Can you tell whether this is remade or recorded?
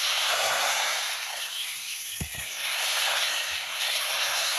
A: remade